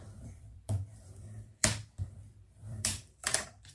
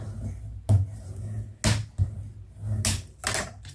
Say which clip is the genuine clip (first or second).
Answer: second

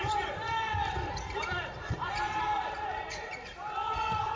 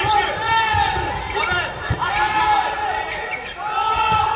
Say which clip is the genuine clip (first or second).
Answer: second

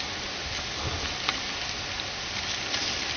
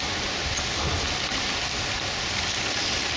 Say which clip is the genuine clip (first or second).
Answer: first